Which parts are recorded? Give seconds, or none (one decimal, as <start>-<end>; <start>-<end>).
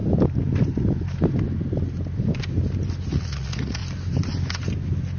0.0-3.1; 3.8-5.2